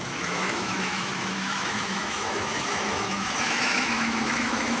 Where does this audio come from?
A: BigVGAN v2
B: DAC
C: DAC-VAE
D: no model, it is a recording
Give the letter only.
C